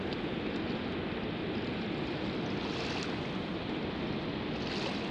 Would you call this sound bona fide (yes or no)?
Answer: yes